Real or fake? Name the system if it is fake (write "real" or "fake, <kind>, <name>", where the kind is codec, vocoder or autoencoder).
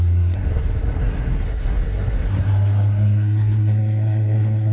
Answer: fake, codec, SNAC